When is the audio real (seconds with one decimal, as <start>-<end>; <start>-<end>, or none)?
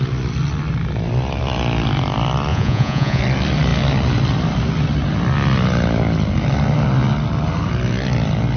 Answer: 0.0-2.5; 3.2-8.6